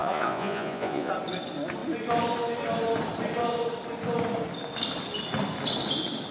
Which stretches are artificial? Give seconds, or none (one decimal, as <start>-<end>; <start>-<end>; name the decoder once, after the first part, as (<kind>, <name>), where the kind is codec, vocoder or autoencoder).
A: 0.0-1.1 (vocoder, Vocos)